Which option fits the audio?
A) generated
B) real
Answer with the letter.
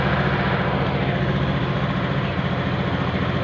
B